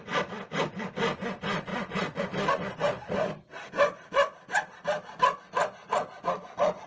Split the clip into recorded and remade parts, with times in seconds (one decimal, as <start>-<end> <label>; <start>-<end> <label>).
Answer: 0.0-1.7 recorded; 1.7-2.2 remade; 2.2-5.8 recorded; 5.8-6.9 remade